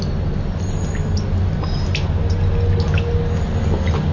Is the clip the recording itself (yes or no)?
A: yes